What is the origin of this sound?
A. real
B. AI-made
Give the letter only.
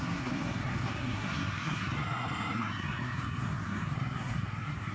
B